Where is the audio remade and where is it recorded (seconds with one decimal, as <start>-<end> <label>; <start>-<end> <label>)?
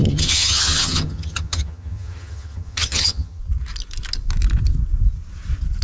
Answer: 0.0-3.4 remade; 3.4-5.8 recorded